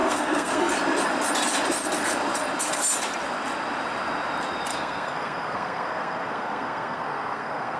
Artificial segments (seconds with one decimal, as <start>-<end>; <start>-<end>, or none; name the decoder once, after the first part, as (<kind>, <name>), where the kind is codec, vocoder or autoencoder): 0.0-0.7 (codec, SNAC); 4.7-7.8